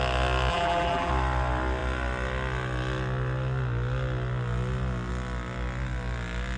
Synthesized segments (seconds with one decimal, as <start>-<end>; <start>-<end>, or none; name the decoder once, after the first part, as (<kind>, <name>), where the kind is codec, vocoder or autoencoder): 0.5-1.1 (vocoder, BigVGAN v2)